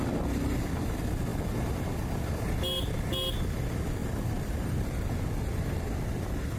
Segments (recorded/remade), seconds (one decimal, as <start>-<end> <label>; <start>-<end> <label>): 0.0-4.0 recorded; 4.0-5.1 remade; 5.1-6.6 recorded